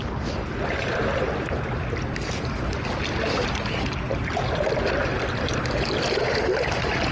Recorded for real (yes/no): yes